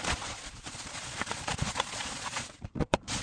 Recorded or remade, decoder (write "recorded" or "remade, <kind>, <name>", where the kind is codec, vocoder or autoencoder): remade, vocoder, Vocos